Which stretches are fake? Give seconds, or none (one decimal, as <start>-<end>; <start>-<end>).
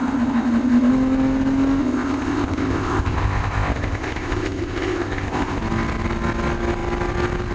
0.0-0.9; 1.8-5.6